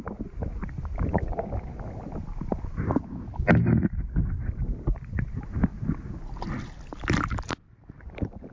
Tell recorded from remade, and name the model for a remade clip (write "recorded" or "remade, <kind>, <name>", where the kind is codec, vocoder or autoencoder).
recorded